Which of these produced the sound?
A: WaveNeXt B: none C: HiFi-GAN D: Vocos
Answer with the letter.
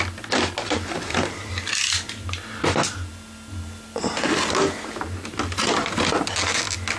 B